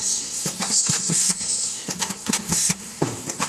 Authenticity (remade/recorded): remade